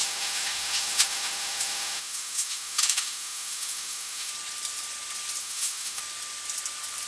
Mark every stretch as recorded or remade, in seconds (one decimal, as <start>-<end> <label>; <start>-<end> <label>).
0.0-4.3 remade; 4.3-5.4 recorded; 5.4-6.0 remade; 6.0-7.1 recorded